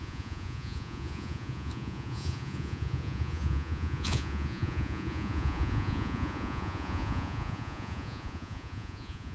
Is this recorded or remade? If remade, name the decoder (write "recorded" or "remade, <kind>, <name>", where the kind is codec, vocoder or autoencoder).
remade, vocoder, Vocos